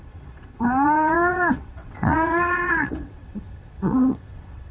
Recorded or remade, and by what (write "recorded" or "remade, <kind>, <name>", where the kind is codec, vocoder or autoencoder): remade, vocoder, WaveNeXt